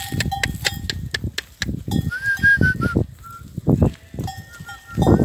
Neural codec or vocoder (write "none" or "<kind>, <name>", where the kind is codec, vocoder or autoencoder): none